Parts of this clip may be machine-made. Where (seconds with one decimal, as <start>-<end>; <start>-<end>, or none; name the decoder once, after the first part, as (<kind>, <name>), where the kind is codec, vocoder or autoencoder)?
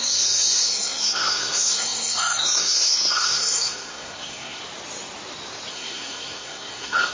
0.0-4.6 (codec, SNAC); 5.7-7.1